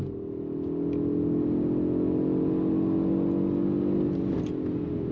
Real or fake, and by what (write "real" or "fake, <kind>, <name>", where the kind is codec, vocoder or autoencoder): real